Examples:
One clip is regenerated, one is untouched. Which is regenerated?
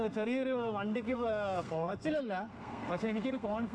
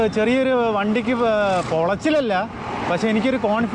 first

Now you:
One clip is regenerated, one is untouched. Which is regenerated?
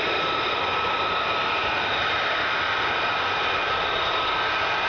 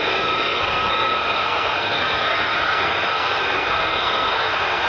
second